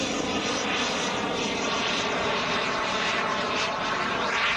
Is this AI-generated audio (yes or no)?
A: no